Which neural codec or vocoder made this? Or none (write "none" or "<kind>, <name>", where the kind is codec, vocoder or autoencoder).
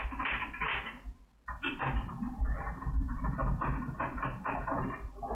vocoder, BigVGAN v2